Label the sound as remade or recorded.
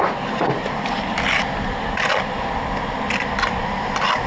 recorded